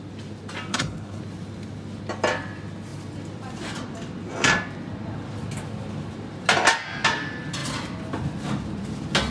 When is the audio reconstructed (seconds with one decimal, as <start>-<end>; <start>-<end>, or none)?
0.7-1.2